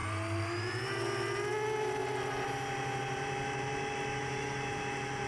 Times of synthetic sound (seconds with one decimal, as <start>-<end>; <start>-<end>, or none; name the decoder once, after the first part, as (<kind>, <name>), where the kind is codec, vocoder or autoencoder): none